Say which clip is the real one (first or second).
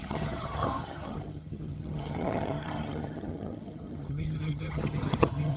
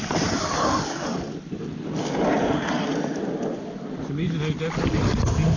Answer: second